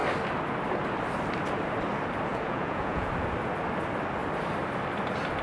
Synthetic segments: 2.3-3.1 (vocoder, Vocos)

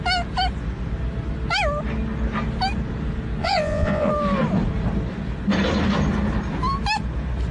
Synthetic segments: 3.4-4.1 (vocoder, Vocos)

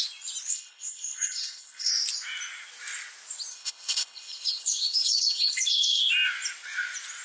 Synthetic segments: 0.5-1.9 (codec, HILCodec); 3.5-6.0